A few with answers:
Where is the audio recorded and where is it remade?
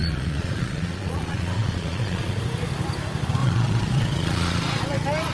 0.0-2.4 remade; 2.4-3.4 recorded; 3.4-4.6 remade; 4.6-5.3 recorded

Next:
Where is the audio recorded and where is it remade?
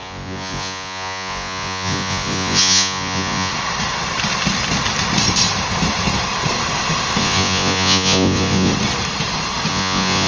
0.0-3.5 remade; 3.5-7.2 recorded; 7.2-8.7 remade; 8.7-9.7 recorded; 9.7-10.3 remade